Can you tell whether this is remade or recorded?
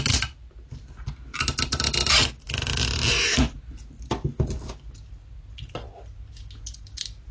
recorded